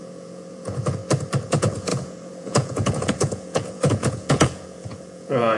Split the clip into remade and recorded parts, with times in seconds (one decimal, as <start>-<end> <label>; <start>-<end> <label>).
0.0-1.0 remade; 1.0-1.5 recorded; 1.5-5.6 remade